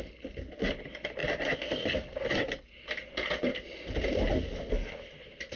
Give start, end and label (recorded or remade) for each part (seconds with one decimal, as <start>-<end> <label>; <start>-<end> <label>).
0.0-5.6 recorded